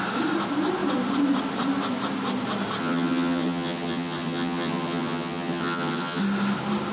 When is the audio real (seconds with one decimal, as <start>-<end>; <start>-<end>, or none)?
0.0-2.8; 6.2-6.9